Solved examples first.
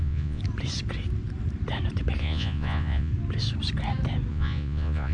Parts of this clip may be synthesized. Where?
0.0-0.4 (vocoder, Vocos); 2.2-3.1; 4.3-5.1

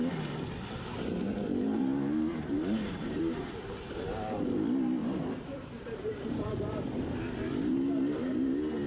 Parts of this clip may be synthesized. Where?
1.2-4.5 (vocoder, BigVGAN v2); 5.0-6.9; 7.7-8.3

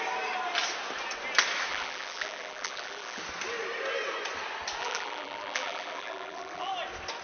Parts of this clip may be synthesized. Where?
1.7-3.2 (vocoder, BigVGAN v2); 4.8-6.7

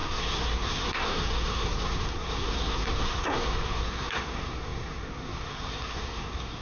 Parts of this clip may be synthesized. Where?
0.0-6.6 (codec, SNAC)

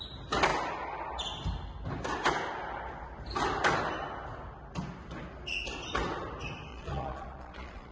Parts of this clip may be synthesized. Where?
6.7-7.9 (vocoder, Vocos)

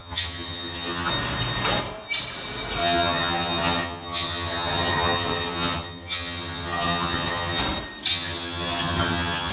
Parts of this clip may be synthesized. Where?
0.0-1.1 (vocoder, HiFi-GAN); 2.8-7.6; 8.1-9.5

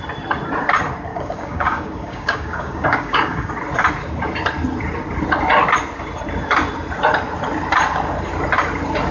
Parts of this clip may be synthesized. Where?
1.1-3.5 (codec, DAC)